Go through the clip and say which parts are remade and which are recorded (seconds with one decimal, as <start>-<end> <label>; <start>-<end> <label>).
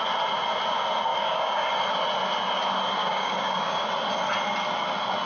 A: 0.0-1.1 recorded; 1.1-1.7 remade; 1.7-3.0 recorded; 3.0-3.9 remade; 3.9-5.3 recorded